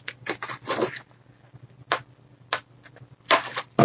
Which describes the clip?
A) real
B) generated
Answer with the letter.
A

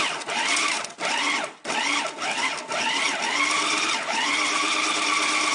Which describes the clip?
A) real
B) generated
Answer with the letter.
A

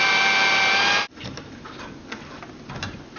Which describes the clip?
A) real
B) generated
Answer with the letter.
A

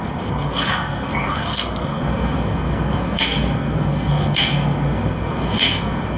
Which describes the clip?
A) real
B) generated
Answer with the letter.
B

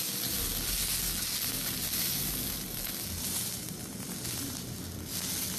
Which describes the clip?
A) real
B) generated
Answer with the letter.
A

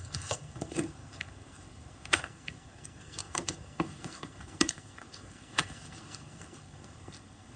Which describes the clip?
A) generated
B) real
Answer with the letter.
A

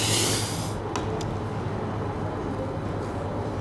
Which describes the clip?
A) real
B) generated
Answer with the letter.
A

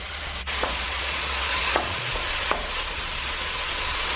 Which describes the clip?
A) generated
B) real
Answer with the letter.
A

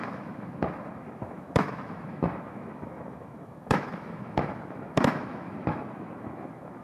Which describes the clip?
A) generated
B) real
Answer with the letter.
A